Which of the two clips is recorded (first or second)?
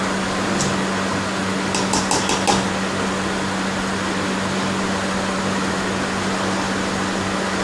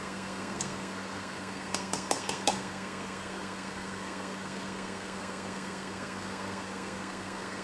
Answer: first